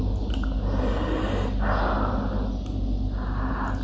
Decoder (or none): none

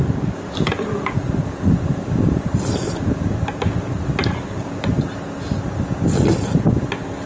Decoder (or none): none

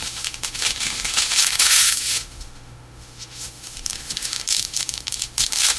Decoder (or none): autoencoder, DAC-VAE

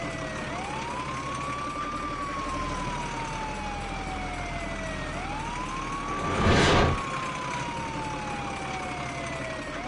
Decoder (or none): none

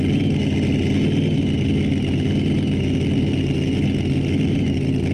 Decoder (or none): none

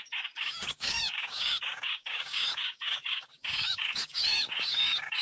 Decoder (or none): codec, DAC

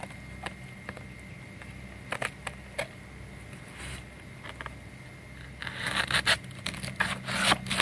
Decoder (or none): none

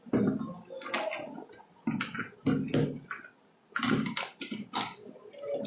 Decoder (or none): none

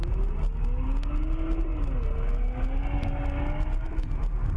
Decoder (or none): none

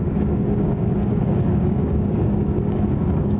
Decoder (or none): codec, DAC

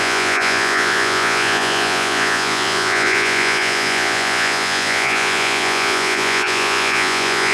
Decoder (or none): vocoder, Vocos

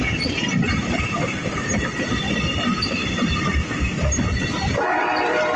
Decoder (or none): none